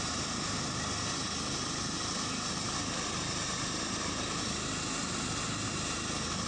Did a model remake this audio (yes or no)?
no